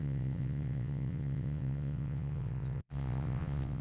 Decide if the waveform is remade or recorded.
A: remade